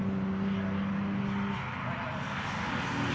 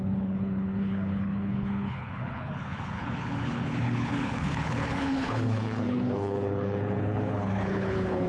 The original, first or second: first